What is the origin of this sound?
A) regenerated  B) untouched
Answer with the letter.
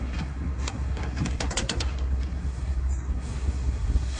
A